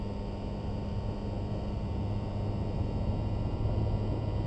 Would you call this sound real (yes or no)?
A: yes